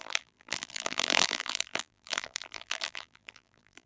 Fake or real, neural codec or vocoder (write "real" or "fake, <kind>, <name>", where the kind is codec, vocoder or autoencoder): fake, vocoder, BigVGAN v2